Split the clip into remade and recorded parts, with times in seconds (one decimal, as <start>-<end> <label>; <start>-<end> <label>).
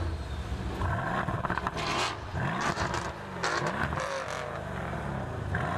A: 0.0-5.8 recorded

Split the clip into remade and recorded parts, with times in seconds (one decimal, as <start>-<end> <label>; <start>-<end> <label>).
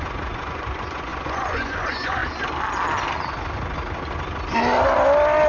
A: 0.0-2.2 remade; 2.2-5.5 recorded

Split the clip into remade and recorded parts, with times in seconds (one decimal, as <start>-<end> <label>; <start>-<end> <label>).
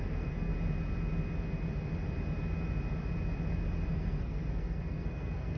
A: 0.0-0.5 remade; 0.5-3.9 recorded; 3.9-5.6 remade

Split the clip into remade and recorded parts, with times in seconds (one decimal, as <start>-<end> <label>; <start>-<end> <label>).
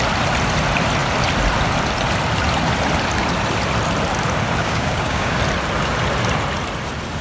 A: 0.0-4.6 recorded; 4.6-5.4 remade; 5.4-7.2 recorded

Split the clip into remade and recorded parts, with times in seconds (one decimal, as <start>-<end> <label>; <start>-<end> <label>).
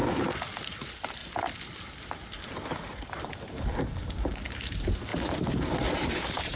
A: 0.0-1.2 remade; 1.2-2.9 recorded; 2.9-6.6 remade